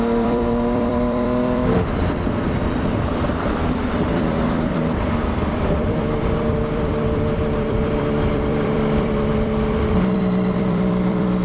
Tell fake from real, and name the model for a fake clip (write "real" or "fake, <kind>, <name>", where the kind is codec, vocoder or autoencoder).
fake, vocoder, BigVGAN v2